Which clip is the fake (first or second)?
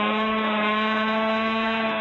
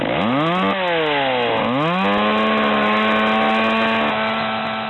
first